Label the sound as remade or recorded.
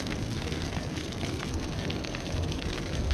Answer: remade